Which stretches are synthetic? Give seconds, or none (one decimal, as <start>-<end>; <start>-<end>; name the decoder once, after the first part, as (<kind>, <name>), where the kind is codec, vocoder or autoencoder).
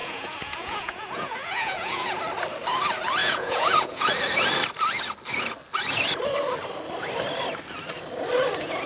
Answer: 0.0-2.2 (vocoder, Vocos); 3.2-4.1